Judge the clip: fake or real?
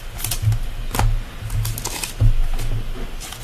real